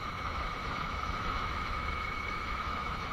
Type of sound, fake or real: fake